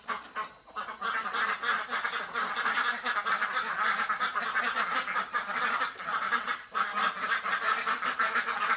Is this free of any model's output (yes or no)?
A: yes